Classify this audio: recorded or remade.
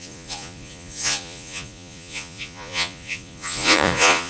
remade